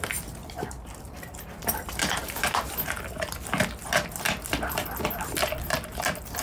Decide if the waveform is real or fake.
real